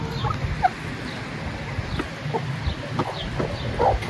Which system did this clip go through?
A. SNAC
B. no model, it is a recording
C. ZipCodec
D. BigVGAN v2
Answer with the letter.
B